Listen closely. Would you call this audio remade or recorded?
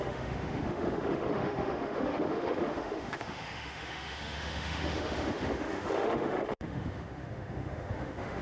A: remade